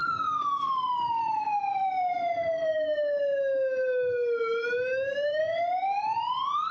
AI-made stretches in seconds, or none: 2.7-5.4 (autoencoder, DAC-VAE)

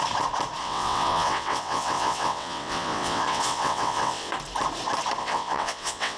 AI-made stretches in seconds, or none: 0.6-4.3 (vocoder, WaveNeXt); 5.2-6.2

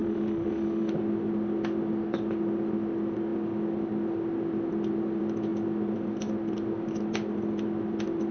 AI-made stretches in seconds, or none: 0.0-0.9 (autoencoder, DAC-VAE)

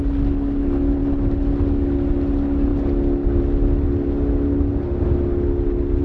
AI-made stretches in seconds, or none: none